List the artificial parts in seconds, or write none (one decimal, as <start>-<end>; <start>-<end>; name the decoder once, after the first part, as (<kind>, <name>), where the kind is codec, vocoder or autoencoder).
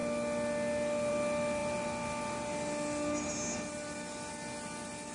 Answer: none